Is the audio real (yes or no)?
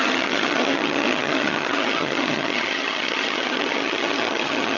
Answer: no